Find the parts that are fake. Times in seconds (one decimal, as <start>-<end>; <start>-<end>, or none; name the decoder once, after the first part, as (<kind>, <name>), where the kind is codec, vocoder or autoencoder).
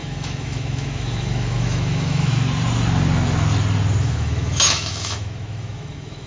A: 0.0-2.3 (autoencoder, DAC-VAE); 4.0-6.3